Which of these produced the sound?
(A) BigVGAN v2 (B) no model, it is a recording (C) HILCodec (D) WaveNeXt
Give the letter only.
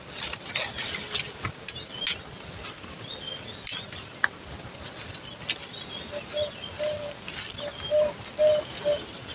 B